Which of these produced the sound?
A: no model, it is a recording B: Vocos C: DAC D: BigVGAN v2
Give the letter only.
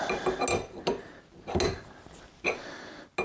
A